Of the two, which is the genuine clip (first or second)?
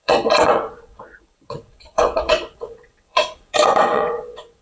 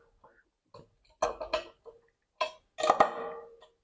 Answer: second